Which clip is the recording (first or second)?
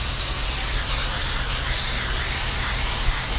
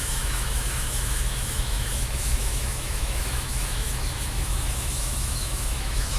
first